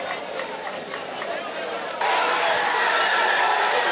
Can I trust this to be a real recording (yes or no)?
yes